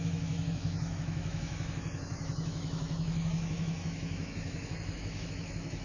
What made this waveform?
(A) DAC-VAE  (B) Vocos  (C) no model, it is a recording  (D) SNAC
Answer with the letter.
A